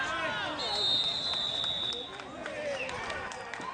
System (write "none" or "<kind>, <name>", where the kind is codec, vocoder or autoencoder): none